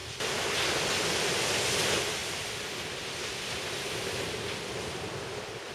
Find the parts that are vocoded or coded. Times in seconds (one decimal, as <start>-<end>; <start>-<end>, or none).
none